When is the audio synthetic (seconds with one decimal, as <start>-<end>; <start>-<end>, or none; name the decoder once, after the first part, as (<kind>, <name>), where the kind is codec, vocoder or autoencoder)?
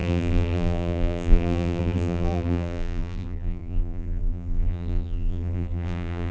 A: 0.0-6.3 (vocoder, BigVGAN v2)